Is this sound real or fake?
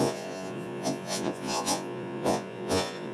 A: fake